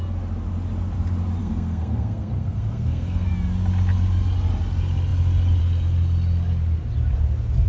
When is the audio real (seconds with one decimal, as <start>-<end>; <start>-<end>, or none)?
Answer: 0.0-1.4; 3.3-7.7